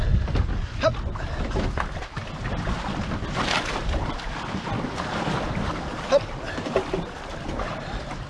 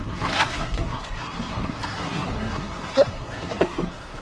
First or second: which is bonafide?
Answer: first